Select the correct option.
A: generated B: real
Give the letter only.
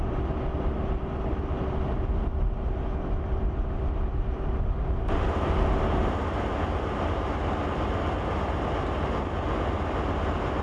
B